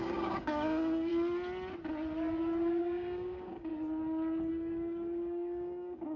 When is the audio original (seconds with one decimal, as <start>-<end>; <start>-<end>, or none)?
1.1-2.8; 3.7-4.5